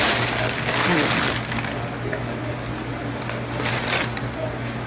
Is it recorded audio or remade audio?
recorded